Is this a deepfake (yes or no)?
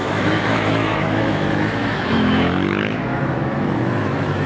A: yes